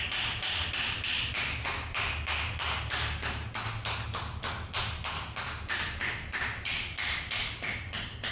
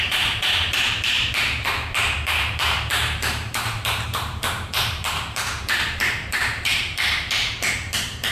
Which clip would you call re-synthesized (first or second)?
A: second